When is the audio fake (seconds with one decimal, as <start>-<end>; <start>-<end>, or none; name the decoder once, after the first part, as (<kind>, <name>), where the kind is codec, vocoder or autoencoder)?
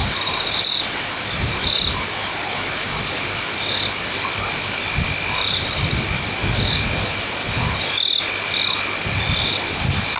0.0-6.4 (vocoder, BigVGAN v2); 8.6-10.2